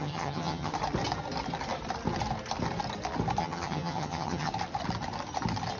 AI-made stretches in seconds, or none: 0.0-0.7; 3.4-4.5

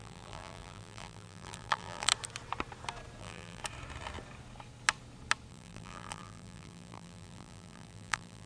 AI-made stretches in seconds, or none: 0.0-2.1; 3.2-3.6; 5.5-8.5

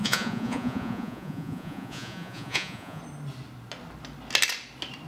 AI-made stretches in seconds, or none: 0.0-3.0

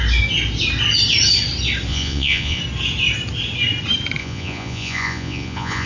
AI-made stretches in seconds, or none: 1.9-2.6; 4.2-5.9

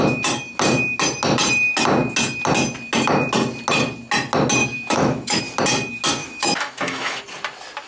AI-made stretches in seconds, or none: 4.6-5.4; 6.2-7.2

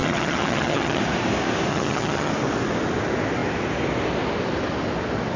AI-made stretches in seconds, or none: 0.0-1.0; 1.7-2.3

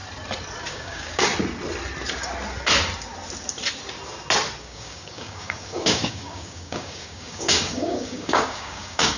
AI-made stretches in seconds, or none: 0.7-1.3; 4.6-9.2

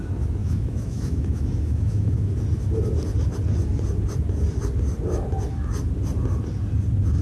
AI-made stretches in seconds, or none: 0.4-2.3